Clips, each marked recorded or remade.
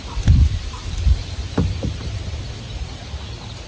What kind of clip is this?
remade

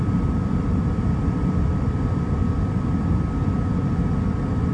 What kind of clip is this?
recorded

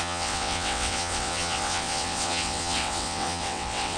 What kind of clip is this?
remade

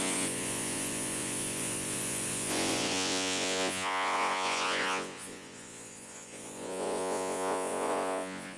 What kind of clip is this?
remade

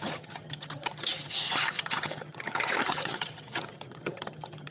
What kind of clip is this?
remade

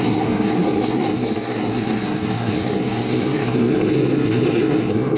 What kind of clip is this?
remade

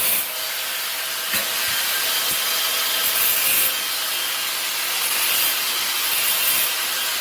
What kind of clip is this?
recorded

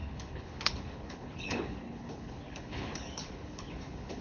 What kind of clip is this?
remade